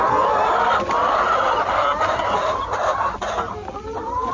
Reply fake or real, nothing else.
fake